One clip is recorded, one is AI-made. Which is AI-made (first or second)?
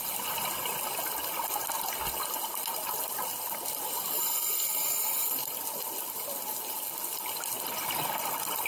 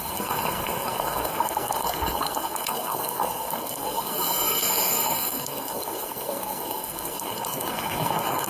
second